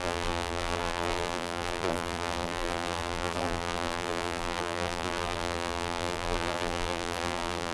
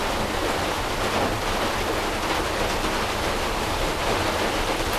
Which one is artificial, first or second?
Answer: first